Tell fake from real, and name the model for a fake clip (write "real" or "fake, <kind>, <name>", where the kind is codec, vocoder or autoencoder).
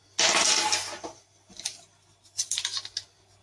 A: real